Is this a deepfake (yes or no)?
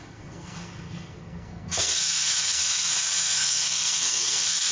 yes